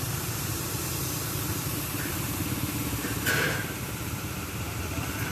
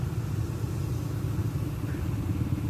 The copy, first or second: first